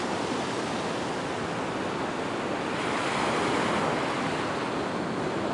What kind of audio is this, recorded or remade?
recorded